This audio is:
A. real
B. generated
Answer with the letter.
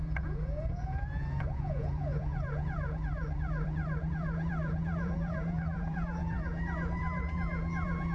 B